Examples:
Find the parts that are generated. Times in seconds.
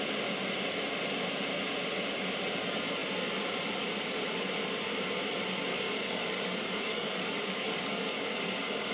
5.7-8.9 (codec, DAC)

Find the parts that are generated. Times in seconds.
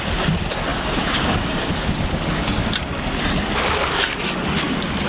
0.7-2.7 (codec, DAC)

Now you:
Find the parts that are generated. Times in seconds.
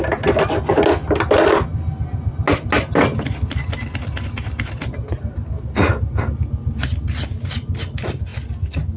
none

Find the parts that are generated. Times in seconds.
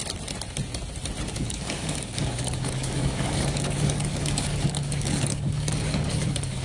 1.3-6.6 (codec, DAC)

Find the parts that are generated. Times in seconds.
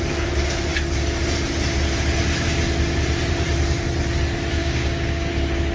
4.6-5.3 (codec, DAC)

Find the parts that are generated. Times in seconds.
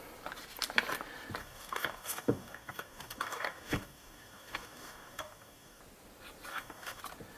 1.4-5.8 (codec, DAC); 6.5-7.0